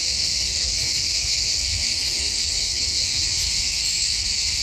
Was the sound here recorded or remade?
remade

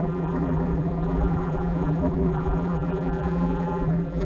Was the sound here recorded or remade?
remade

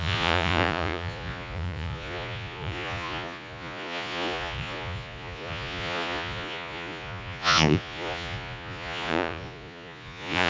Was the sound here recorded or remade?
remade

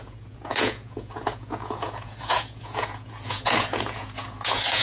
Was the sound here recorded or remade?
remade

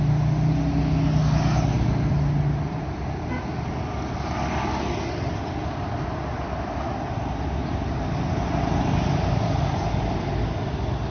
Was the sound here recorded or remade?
recorded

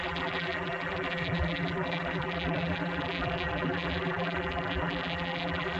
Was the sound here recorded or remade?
remade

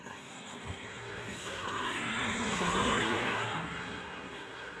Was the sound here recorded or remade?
remade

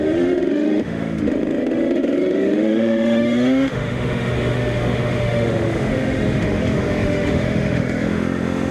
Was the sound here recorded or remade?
remade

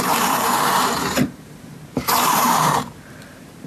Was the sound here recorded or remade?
remade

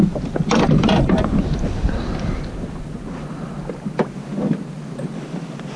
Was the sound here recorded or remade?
recorded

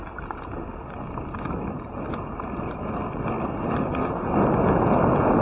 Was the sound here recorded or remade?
recorded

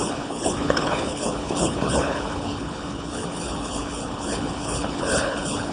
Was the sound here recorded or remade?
remade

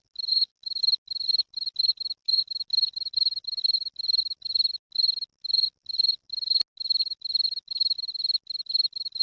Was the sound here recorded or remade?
recorded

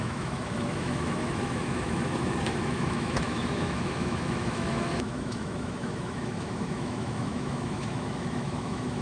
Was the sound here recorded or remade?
remade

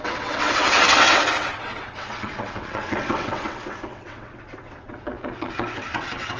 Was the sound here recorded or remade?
remade